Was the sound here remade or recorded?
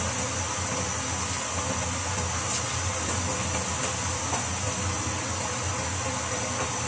recorded